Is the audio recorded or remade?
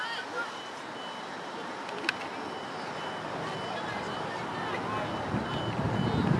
recorded